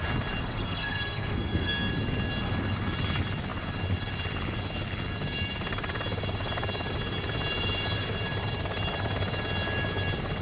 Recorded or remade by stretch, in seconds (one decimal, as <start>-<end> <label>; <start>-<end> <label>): 0.0-0.4 recorded; 0.4-1.9 remade; 1.9-10.4 recorded